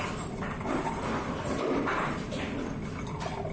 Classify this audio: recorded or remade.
remade